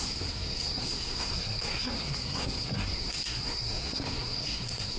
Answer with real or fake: fake